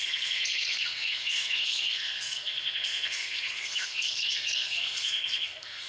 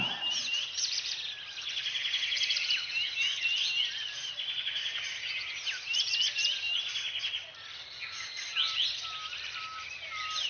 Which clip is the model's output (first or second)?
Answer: first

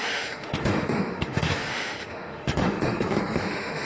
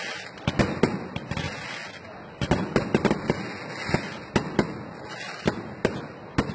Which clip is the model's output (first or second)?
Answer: first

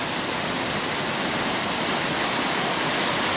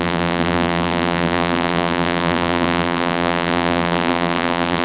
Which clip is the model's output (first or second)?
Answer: second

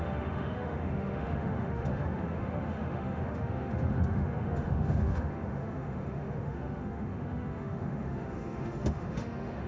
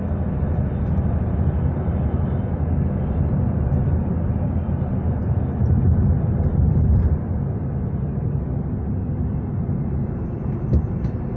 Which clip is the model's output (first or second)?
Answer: first